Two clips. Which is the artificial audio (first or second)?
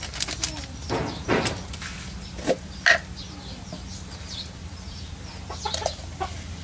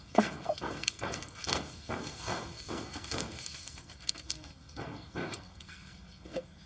second